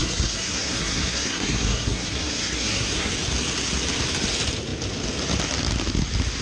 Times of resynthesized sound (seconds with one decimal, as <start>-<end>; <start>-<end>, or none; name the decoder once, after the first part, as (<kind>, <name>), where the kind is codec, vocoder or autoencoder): 0.0-3.1 (codec, SNAC)